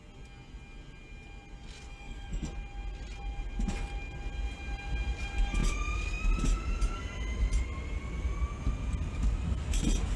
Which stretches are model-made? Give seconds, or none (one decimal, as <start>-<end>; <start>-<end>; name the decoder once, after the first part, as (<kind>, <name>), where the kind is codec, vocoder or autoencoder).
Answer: 1.9-2.5 (codec, SNAC)